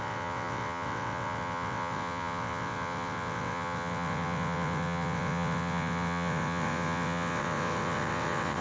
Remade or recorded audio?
remade